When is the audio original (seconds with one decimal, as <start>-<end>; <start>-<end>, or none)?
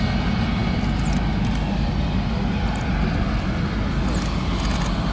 0.0-5.1